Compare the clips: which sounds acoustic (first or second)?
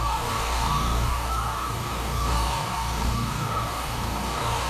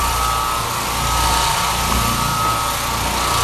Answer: second